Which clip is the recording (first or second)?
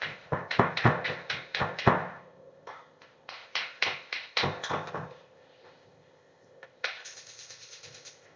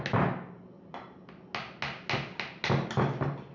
second